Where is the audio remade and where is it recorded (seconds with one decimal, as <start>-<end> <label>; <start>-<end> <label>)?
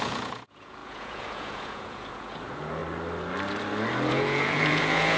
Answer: 0.0-2.8 remade; 2.8-4.1 recorded; 4.1-5.2 remade